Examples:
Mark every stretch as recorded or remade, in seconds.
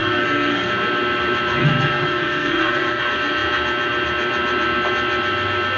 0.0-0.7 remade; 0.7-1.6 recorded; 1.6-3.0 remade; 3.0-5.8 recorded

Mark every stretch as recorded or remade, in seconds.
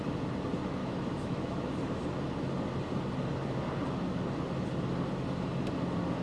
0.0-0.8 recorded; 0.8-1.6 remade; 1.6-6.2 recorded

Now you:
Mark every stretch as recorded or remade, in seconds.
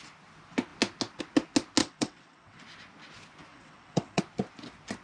0.0-1.8 recorded; 1.8-2.6 remade; 2.6-3.5 recorded; 3.5-4.2 remade; 4.2-5.0 recorded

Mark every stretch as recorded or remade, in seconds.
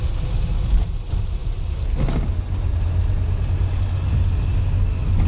0.0-5.3 recorded